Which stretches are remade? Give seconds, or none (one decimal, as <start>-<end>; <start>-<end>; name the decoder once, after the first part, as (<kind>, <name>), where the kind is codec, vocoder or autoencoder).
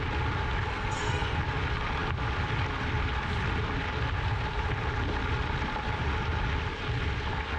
0.7-1.4 (codec, SNAC)